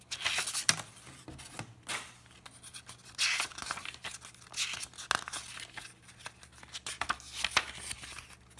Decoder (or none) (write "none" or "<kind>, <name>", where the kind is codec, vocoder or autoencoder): none